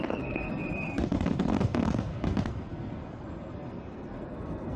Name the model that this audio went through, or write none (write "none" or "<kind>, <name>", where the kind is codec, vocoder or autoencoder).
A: codec, SNAC